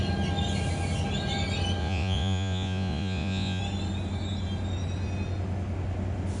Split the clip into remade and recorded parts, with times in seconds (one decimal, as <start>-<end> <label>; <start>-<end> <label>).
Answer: 0.0-1.8 recorded; 1.8-3.6 remade; 3.6-6.4 recorded